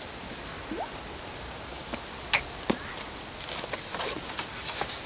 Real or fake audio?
real